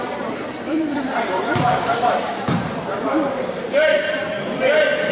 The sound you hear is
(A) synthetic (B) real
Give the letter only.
A